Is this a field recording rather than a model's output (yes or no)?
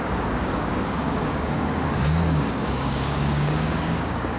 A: no